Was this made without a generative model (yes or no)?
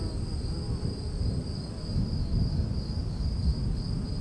yes